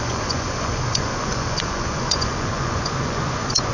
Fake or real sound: fake